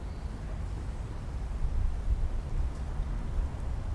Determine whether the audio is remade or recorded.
recorded